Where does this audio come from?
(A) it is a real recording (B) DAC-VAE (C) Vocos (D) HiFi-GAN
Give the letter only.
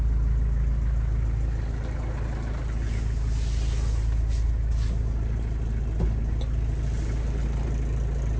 A